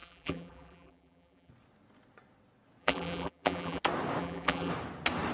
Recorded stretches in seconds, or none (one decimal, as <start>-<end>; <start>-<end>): 1.5-2.8; 3.8-4.2; 4.7-5.3